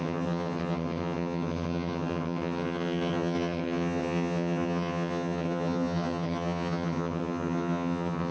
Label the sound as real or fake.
fake